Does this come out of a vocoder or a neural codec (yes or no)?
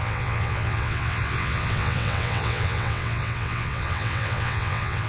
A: yes